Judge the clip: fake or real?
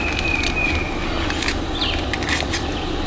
real